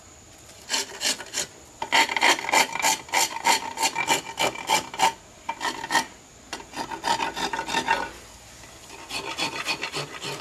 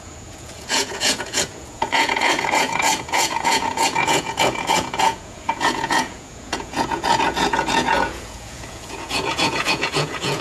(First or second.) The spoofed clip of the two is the second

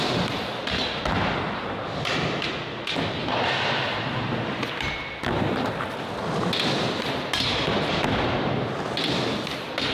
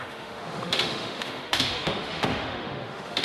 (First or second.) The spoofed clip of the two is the second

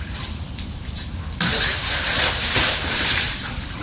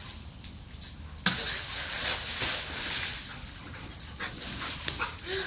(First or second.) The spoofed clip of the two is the first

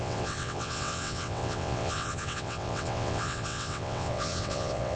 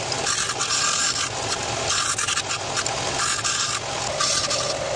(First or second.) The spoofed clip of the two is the first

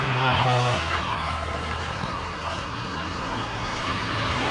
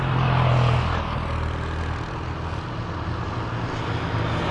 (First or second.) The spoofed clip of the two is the first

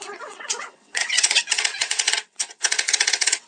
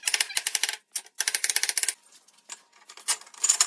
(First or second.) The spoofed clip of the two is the first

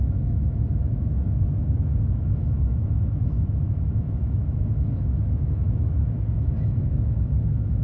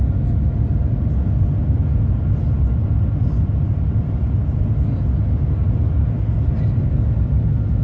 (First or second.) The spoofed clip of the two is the first